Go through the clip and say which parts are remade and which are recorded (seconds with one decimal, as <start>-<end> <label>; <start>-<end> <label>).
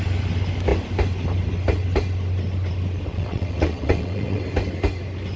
0.0-3.1 recorded; 3.1-4.4 remade; 4.4-5.4 recorded